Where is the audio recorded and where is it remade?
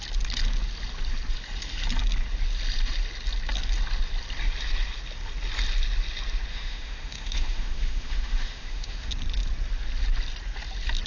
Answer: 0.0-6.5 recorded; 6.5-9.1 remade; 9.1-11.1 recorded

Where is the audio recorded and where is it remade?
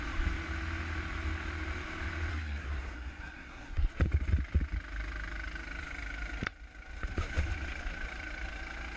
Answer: 0.0-2.3 recorded; 2.3-3.9 remade; 3.9-9.0 recorded